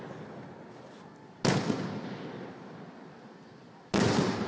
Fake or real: real